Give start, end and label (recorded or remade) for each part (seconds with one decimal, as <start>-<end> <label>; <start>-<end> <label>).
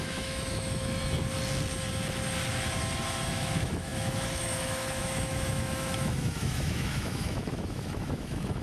0.0-1.0 remade; 1.0-3.3 recorded; 3.3-8.6 remade